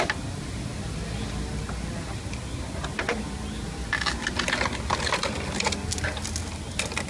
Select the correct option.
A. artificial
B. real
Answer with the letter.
B